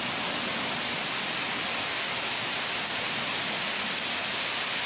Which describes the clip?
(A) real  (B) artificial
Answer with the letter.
A